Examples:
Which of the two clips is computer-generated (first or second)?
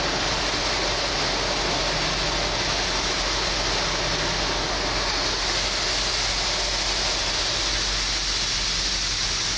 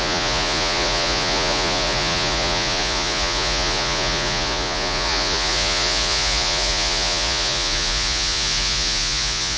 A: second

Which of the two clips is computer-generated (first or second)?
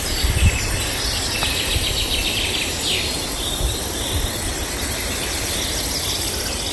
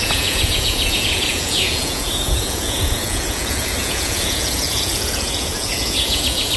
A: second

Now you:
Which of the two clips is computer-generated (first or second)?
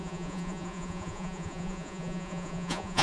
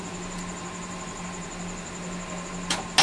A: first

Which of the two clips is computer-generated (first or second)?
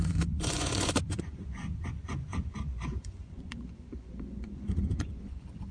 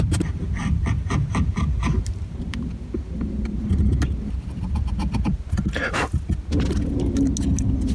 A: first